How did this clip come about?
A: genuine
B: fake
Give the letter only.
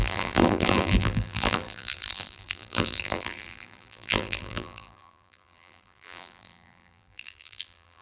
B